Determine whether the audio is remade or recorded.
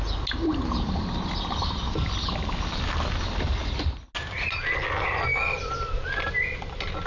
recorded